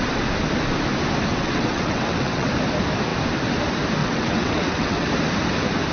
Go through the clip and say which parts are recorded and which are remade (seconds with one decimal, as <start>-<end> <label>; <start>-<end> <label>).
0.0-1.3 recorded; 1.3-2.5 remade; 2.5-4.0 recorded; 4.0-5.1 remade; 5.1-5.9 recorded